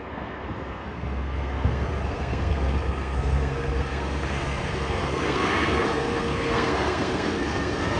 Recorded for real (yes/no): no